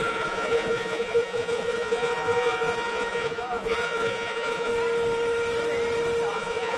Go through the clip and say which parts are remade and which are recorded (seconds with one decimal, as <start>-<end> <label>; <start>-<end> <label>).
0.0-4.7 remade; 4.7-6.3 recorded; 6.3-6.8 remade